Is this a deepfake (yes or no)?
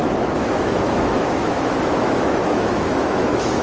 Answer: yes